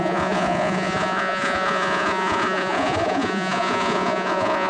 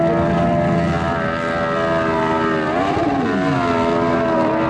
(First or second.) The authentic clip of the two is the second